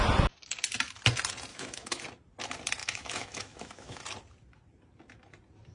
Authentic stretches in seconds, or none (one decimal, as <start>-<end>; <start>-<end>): 0.0-1.5; 2.0-2.8; 4.0-5.7